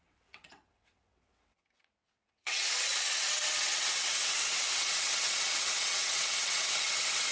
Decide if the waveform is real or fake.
fake